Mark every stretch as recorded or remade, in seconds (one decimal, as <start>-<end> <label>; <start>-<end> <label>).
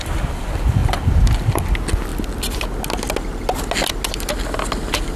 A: 0.0-5.2 recorded